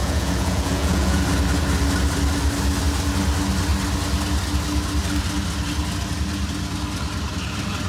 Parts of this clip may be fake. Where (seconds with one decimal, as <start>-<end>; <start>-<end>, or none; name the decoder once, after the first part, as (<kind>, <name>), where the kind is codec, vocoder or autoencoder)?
0.0-1.2 (vocoder, Vocos)

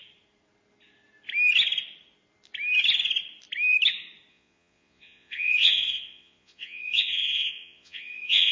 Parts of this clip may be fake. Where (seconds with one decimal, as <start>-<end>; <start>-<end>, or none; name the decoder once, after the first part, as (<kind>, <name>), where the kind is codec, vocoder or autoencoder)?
4.3-8.5 (vocoder, Vocos)

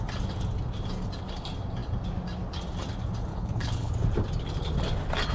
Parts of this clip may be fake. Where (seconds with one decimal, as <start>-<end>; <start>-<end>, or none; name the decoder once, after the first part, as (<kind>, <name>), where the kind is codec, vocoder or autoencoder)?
3.3-3.9 (codec, HILCodec)

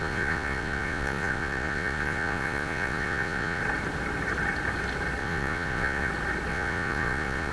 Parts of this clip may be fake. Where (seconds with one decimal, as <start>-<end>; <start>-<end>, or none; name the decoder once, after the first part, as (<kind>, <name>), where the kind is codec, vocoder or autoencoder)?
0.0-3.6 (vocoder, Vocos); 5.2-6.1; 6.5-7.5

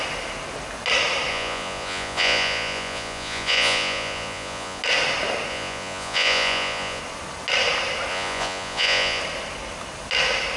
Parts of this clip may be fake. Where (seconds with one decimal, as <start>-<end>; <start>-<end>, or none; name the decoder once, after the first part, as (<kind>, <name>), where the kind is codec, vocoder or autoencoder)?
1.3-4.8 (vocoder, Vocos); 5.5-7.0; 8.1-9.2

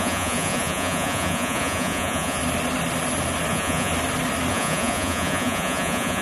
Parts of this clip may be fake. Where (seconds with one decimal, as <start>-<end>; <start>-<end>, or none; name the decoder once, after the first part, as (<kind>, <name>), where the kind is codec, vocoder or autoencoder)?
0.0-2.4 (vocoder, Vocos); 3.5-3.9; 4.5-6.2

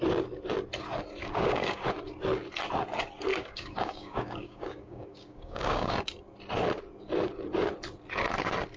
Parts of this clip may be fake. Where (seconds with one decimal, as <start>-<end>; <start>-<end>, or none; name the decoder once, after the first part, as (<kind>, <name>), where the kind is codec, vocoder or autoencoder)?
1.2-1.8 (codec, DAC); 3.3-5.9